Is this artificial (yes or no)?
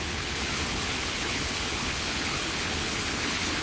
yes